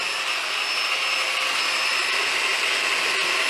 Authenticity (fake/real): real